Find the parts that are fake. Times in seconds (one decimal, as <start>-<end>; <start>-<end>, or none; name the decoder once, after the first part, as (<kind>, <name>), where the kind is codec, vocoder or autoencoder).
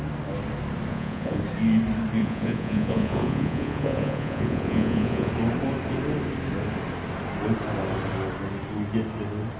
0.9-1.4 (vocoder, Vocos); 2.2-5.3